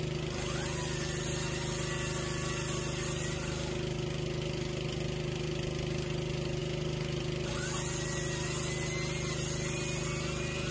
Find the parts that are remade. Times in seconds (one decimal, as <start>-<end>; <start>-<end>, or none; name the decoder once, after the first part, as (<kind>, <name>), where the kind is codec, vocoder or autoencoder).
none